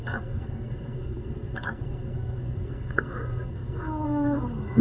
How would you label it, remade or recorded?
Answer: remade